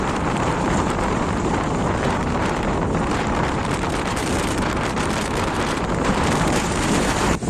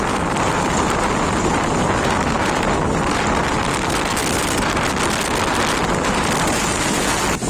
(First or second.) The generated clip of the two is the first